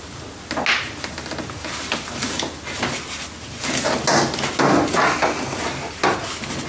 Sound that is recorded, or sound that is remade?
recorded